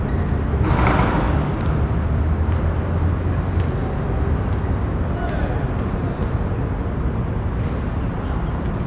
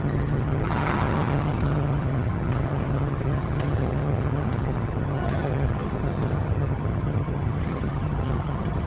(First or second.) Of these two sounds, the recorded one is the first